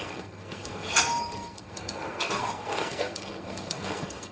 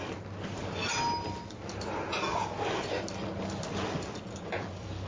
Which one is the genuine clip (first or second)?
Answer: second